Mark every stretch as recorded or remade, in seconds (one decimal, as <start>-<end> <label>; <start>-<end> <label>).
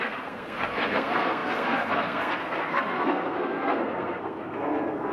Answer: 0.0-5.1 remade